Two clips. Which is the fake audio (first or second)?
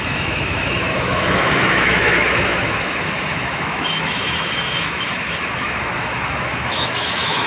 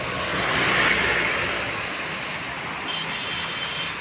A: first